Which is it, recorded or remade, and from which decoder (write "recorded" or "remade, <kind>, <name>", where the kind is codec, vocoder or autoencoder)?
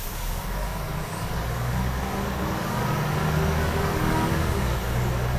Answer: remade, codec, DAC